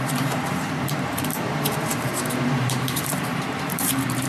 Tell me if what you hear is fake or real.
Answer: fake